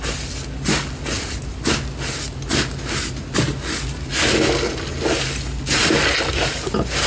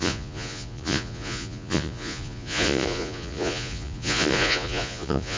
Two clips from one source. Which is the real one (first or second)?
first